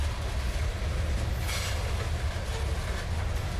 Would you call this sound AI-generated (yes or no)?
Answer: no